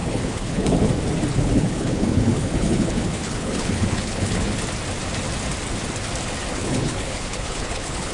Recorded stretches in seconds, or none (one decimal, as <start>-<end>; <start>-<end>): 0.9-1.3; 4.6-6.6